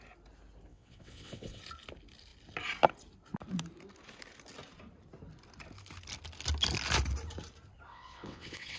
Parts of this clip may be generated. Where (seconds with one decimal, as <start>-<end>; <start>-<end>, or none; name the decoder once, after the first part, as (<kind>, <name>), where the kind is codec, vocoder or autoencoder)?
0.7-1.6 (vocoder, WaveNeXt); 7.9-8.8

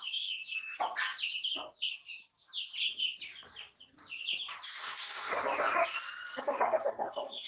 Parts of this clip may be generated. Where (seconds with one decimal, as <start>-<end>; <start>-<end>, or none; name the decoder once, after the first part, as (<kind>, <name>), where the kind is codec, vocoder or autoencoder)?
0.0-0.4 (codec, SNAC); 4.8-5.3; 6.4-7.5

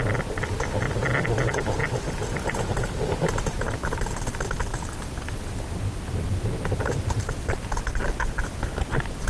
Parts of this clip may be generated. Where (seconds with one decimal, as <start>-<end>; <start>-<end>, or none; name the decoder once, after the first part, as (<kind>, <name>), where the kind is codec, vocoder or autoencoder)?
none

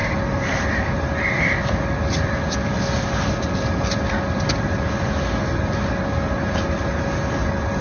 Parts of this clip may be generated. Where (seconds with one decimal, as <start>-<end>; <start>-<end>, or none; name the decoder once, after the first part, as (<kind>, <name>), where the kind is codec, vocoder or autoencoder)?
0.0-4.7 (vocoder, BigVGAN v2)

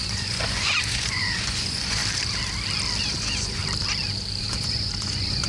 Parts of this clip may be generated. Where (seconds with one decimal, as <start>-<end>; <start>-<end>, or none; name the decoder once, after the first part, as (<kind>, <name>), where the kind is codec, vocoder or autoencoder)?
0.0-2.0 (vocoder, Vocos); 3.0-3.6; 4.4-5.5

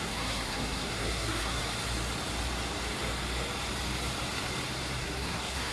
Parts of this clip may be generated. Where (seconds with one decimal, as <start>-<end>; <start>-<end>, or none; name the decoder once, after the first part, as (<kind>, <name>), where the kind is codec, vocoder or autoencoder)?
0.0-1.6 (codec, SNAC); 5.0-5.7